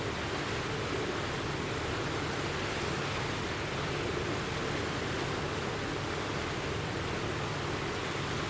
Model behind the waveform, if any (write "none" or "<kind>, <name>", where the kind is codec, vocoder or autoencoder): none